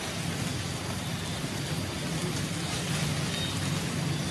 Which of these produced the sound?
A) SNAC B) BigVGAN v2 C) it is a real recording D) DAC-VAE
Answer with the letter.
C